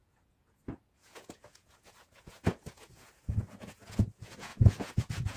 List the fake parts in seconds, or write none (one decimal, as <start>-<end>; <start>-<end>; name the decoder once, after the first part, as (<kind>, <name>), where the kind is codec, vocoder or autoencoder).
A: 0.0-5.4 (vocoder, Vocos)